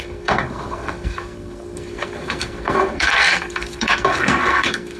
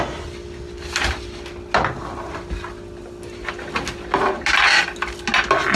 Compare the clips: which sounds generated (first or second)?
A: first